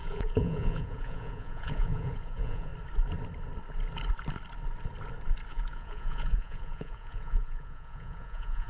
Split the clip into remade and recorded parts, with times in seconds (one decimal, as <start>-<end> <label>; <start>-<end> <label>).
0.0-2.7 remade; 2.7-5.5 recorded; 5.5-8.7 remade